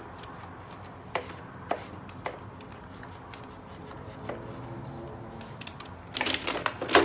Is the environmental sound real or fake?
real